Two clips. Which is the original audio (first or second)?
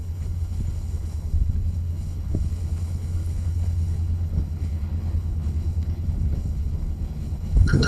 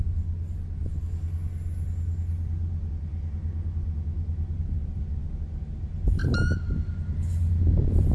second